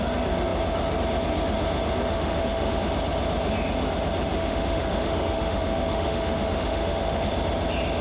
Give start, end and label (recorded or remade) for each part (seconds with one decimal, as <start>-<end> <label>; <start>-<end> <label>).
0.0-2.1 recorded; 2.1-2.8 remade; 2.8-4.3 recorded; 4.3-7.3 remade; 7.3-8.0 recorded